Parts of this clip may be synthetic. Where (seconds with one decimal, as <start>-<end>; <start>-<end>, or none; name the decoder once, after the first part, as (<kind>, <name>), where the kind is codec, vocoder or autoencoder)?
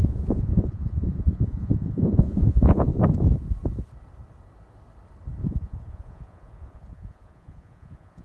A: 0.0-2.9 (vocoder, Vocos); 5.4-8.2